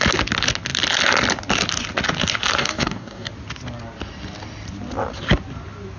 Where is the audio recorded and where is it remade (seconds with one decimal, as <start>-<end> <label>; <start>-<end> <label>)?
0.0-2.6 recorded; 2.6-3.3 remade; 3.3-6.0 recorded